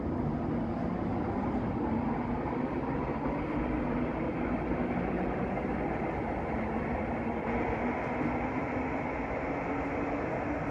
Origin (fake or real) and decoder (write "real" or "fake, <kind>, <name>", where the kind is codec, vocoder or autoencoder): real